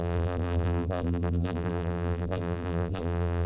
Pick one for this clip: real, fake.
fake